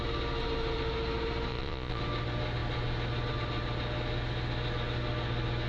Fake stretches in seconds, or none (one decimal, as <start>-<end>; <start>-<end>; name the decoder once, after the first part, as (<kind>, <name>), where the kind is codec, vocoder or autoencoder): 1.5-2.0 (vocoder, Vocos)